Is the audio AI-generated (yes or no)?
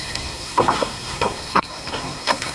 yes